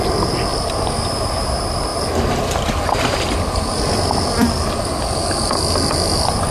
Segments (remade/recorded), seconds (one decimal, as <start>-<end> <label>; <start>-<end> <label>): 0.0-6.5 recorded